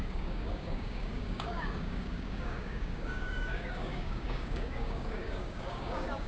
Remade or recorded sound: remade